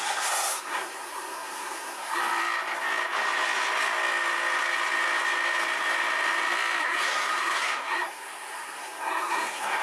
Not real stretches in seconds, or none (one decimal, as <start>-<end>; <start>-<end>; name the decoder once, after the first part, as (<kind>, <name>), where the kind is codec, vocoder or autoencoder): 0.0-2.2 (codec, SNAC); 6.8-9.8